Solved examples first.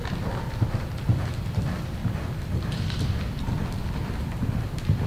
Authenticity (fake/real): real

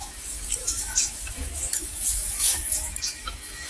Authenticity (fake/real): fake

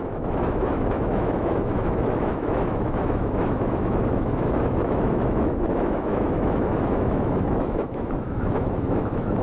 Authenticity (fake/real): fake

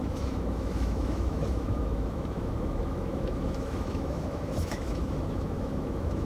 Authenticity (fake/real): fake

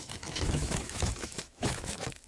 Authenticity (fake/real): fake